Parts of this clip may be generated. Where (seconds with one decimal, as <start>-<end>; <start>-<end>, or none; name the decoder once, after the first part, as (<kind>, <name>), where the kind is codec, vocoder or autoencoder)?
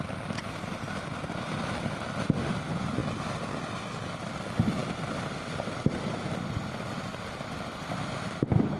none